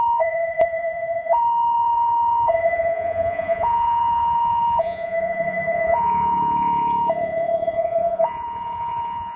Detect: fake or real fake